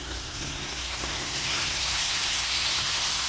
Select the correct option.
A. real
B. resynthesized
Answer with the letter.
B